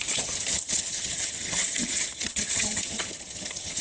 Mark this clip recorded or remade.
remade